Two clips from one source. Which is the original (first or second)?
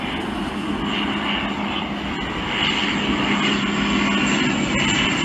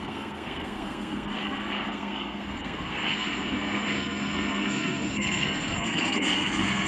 first